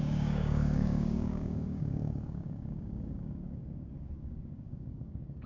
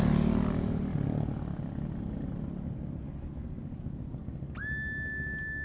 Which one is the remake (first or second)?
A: first